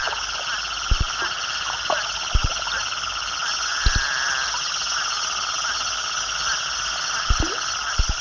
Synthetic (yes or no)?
no